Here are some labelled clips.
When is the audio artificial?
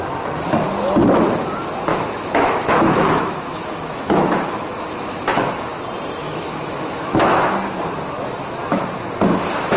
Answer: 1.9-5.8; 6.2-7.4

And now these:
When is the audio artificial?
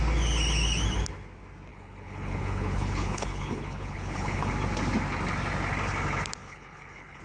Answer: 1.7-4.5; 6.4-7.2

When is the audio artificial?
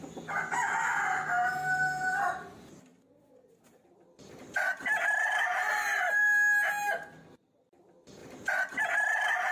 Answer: none